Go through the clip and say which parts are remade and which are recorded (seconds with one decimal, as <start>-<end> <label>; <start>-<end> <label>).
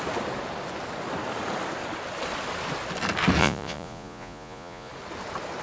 0.0-3.4 recorded; 3.4-4.9 remade; 4.9-5.6 recorded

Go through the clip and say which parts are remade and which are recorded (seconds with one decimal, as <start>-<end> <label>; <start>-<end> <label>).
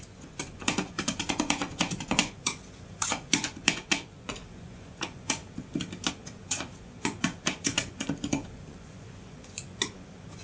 0.0-5.4 remade; 5.4-6.1 recorded; 6.1-10.4 remade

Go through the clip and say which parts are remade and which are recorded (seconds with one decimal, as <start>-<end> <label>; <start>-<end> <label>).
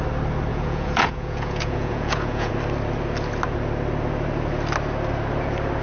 0.0-0.5 recorded; 0.5-2.5 remade; 2.5-5.8 recorded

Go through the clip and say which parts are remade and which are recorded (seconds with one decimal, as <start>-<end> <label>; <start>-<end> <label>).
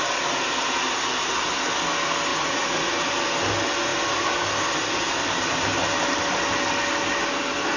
0.0-2.3 recorded; 2.3-3.1 remade; 3.1-7.8 recorded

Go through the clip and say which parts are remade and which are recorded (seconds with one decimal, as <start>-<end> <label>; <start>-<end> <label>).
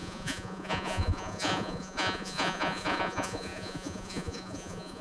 0.0-5.0 remade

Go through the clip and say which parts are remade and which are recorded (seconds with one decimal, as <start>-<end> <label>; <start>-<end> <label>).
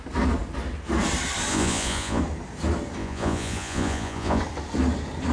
0.0-1.5 recorded; 1.5-2.2 remade; 2.2-3.0 recorded; 3.0-4.4 remade; 4.4-5.3 recorded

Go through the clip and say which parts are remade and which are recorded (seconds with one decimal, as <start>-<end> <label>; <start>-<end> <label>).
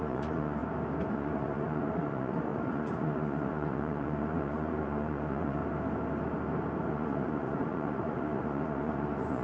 0.0-0.6 remade; 0.6-1.1 recorded; 1.1-5.6 remade; 5.6-6.9 recorded; 6.9-9.4 remade